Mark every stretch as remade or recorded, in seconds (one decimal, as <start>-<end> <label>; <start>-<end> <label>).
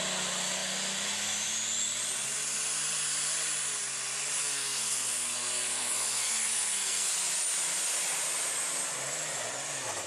0.0-4.4 recorded; 4.4-7.1 remade; 7.1-10.1 recorded